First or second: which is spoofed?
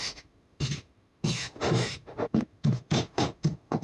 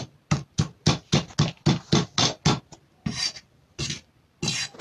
first